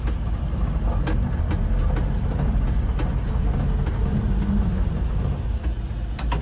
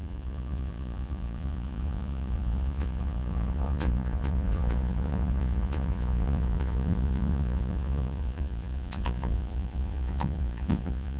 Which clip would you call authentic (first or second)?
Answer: first